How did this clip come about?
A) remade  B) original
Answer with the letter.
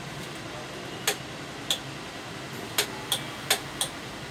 B